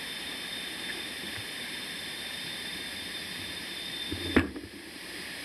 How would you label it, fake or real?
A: fake